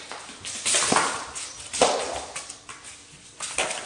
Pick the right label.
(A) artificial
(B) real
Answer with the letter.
B